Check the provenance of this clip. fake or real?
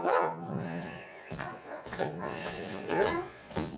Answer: fake